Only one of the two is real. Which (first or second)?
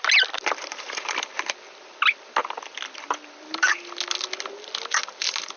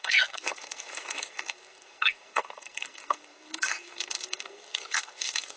first